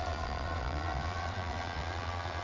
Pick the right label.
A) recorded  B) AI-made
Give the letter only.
B